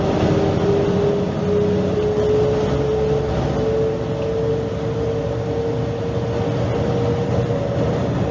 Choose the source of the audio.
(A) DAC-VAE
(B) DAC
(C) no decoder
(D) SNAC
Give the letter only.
C